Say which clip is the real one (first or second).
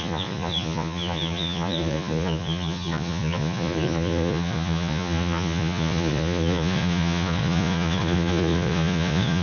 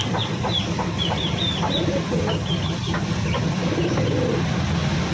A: second